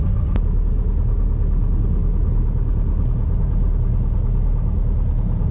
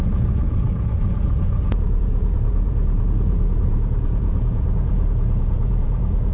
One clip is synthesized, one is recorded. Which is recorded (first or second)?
first